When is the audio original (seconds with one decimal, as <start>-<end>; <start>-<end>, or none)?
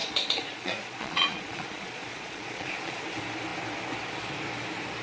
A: 3.0-5.0